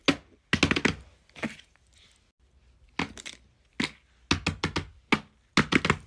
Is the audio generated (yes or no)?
no